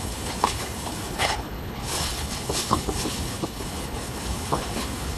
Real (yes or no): no